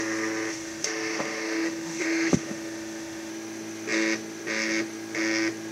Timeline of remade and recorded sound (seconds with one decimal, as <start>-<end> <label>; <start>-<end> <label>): 0.0-0.5 recorded; 0.5-3.3 remade; 3.3-5.7 recorded